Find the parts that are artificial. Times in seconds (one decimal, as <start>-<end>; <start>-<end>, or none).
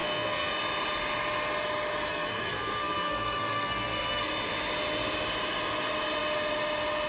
0.0-0.5; 2.1-4.3